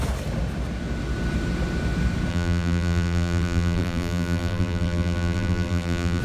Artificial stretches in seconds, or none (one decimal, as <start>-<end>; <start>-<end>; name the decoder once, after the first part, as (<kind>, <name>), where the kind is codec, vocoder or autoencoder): 2.3-6.2 (vocoder, BigVGAN v2)